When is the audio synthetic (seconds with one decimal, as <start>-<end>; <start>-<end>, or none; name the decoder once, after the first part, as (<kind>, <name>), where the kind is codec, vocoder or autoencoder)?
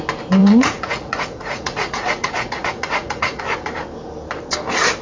0.4-3.4 (vocoder, Vocos)